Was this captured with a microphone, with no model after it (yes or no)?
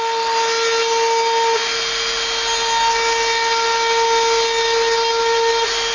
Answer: yes